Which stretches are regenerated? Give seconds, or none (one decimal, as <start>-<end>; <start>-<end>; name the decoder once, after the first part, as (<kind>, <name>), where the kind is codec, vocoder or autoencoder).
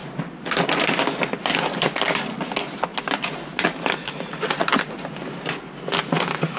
none